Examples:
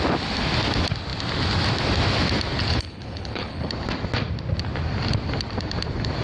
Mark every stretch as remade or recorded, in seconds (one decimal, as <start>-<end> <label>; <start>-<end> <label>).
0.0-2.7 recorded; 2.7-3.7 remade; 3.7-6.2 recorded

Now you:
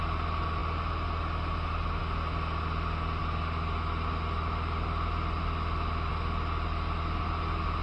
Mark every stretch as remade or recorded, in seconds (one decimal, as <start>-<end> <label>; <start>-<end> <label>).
0.0-7.8 recorded

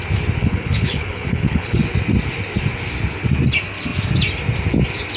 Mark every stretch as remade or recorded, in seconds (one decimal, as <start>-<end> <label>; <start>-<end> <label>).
0.0-0.4 recorded; 0.4-1.8 remade; 1.8-5.2 recorded

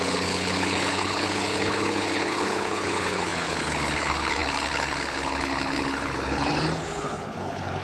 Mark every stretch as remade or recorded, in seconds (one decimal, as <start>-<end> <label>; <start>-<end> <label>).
0.0-7.8 remade